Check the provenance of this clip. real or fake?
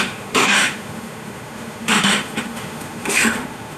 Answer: fake